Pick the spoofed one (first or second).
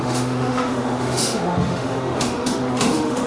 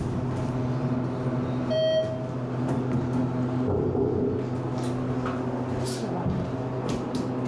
first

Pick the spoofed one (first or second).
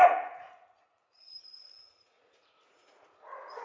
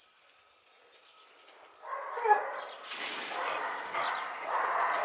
first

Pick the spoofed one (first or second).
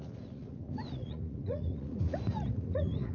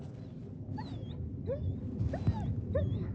first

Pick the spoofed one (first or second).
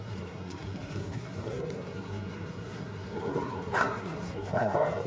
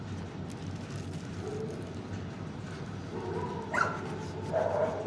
first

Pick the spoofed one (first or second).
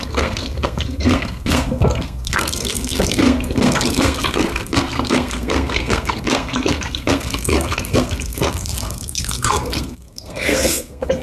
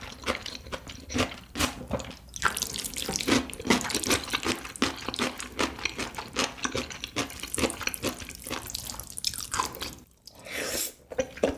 first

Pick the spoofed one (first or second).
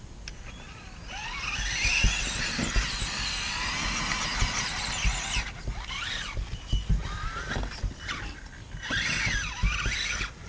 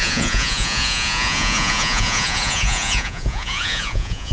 second